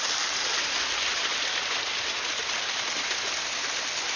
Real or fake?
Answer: real